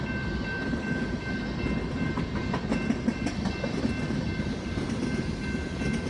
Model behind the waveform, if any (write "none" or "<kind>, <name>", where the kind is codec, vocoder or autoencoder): none